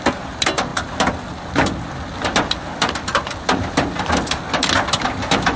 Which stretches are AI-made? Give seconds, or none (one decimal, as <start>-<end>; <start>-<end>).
0.7-4.1